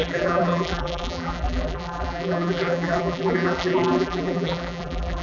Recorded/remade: remade